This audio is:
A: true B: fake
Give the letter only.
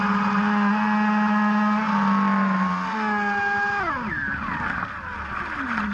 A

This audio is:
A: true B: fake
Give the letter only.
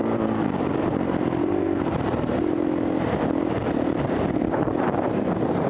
B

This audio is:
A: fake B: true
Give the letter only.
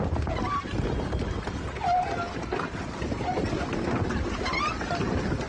B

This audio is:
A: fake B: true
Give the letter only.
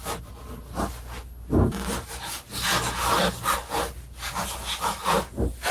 B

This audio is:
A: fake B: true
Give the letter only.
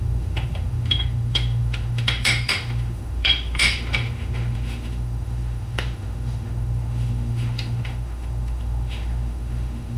A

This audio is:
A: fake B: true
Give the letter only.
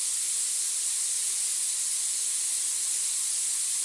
B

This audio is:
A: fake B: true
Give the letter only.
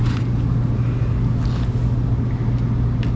B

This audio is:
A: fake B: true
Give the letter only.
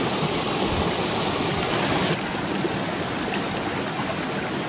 B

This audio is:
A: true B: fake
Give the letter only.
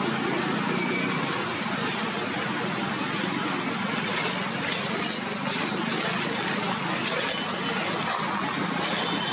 A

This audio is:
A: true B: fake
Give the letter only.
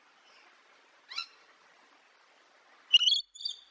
A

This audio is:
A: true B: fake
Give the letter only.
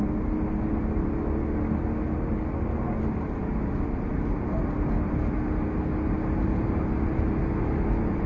A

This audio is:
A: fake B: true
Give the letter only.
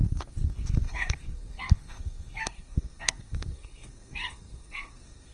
A